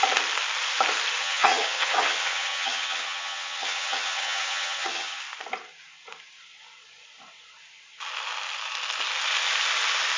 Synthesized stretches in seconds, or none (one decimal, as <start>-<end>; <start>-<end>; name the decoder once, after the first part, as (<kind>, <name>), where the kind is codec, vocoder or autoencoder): 1.2-5.2 (vocoder, HiFi-GAN)